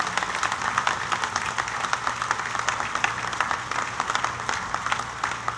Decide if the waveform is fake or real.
real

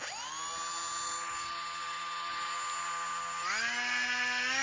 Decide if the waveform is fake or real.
real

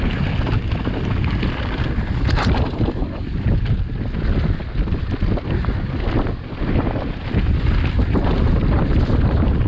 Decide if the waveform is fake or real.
real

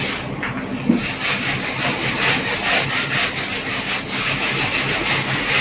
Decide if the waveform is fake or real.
real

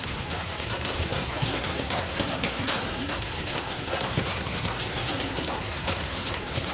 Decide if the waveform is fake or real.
fake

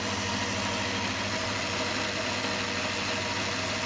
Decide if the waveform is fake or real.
real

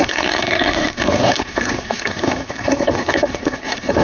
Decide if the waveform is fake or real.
fake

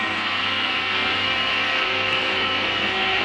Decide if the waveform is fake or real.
fake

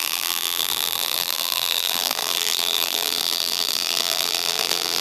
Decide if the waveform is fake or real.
fake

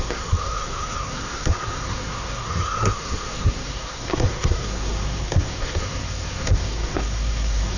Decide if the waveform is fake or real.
fake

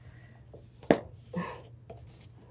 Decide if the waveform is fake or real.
real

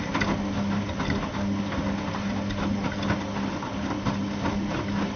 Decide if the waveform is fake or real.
real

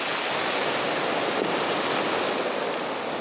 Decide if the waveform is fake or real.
real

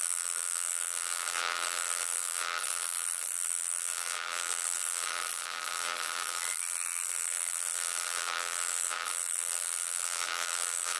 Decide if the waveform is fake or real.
fake